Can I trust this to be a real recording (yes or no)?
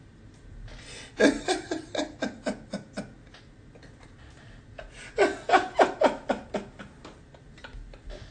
yes